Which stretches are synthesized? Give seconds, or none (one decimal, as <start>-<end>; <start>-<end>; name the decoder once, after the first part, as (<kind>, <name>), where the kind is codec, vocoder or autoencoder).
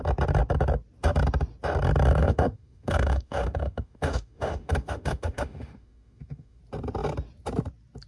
2.2-6.6 (autoencoder, DAC-VAE)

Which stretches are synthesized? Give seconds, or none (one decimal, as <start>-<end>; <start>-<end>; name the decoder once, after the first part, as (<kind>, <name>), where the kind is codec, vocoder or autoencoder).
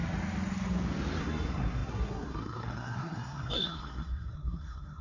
1.2-5.0 (codec, SNAC)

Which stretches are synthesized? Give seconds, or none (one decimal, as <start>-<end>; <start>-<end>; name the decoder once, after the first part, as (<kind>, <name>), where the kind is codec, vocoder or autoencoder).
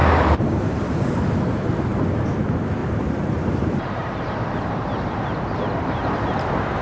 0.0-1.2 (vocoder, BigVGAN v2); 2.8-6.1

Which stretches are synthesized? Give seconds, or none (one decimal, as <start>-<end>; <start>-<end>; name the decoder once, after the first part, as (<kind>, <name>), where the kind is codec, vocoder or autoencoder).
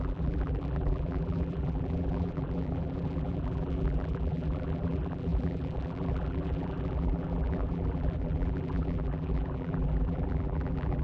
0.0-11.0 (vocoder, BigVGAN v2)